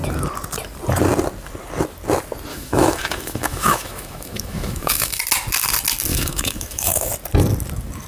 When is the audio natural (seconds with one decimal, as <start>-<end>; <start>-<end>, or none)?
0.0-2.5; 5.2-6.1; 7.1-8.1